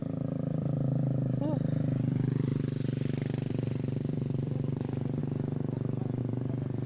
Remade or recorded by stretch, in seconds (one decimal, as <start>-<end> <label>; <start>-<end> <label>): 0.0-2.5 remade; 2.5-3.5 recorded; 3.5-5.2 remade; 5.2-6.2 recorded; 6.2-6.9 remade